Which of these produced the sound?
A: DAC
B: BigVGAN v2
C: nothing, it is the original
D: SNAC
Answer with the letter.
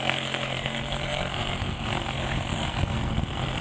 D